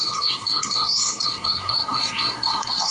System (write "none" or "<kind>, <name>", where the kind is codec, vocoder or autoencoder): codec, SNAC